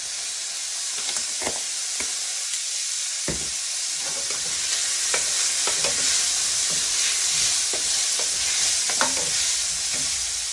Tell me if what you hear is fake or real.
real